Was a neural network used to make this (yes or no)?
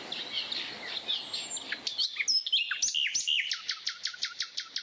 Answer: no